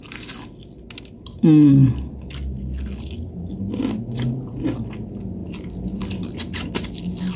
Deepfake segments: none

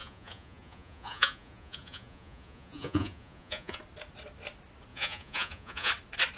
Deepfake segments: 0.0-3.8 (vocoder, Vocos); 4.9-5.9